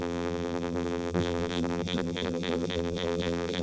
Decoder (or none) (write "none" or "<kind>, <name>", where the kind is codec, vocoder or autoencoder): vocoder, BigVGAN v2